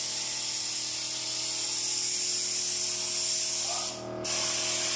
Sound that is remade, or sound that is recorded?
recorded